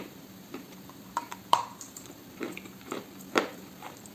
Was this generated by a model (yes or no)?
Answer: yes